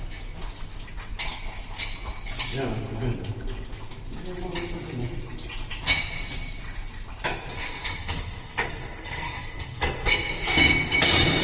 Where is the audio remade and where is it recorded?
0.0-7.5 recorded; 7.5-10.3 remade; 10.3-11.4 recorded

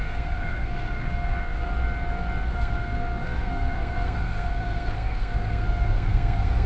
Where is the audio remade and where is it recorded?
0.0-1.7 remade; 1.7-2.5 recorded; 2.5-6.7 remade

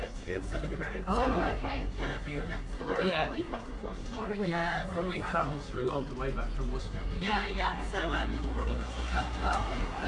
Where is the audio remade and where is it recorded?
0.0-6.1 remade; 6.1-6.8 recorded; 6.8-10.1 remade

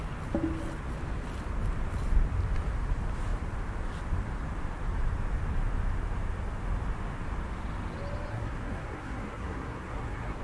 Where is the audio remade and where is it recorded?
0.0-8.3 recorded; 8.3-10.4 remade

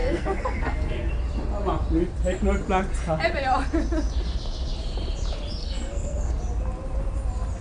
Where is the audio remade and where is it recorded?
0.0-1.1 remade; 1.1-5.6 recorded; 5.6-6.3 remade; 6.3-7.6 recorded

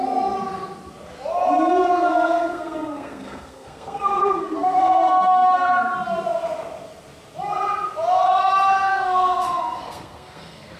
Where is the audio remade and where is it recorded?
0.0-2.1 recorded; 2.1-5.0 remade; 5.0-8.9 recorded; 8.9-10.8 remade

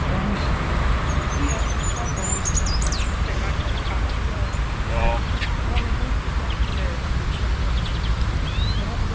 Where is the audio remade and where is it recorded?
0.0-9.1 recorded

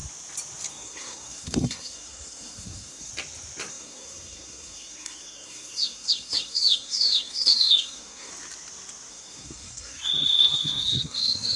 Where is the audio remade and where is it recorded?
0.0-0.7 recorded; 0.7-3.1 remade; 3.1-3.7 recorded; 3.7-8.3 remade; 8.3-9.1 recorded; 9.1-11.6 remade